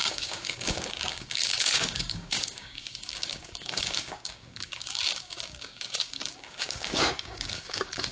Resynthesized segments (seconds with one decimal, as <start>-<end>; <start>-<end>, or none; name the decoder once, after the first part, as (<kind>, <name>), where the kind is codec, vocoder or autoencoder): 0.0-8.1 (codec, DAC)